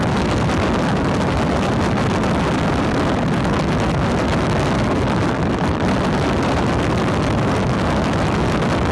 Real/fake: real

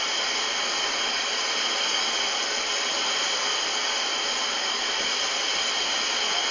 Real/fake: real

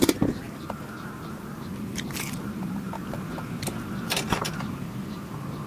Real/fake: fake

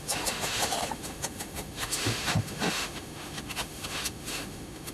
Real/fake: fake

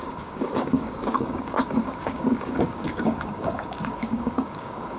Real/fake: fake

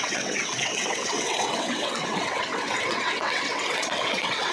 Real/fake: fake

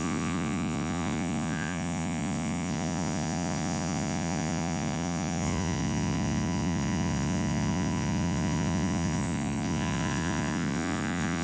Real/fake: fake